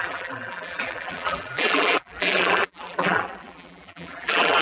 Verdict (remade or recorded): remade